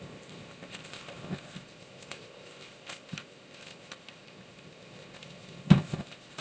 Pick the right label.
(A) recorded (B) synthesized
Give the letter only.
B